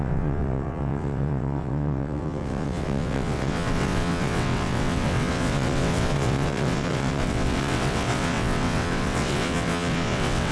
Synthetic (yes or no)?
yes